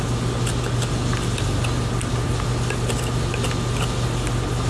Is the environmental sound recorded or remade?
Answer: recorded